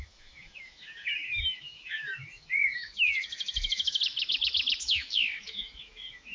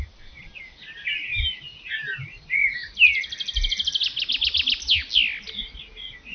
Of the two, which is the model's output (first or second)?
first